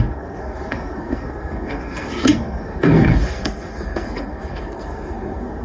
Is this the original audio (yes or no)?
no